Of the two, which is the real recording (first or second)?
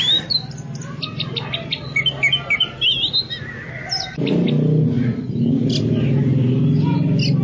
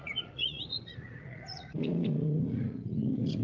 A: first